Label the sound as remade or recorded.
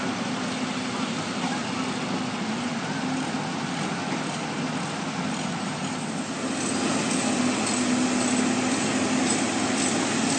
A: recorded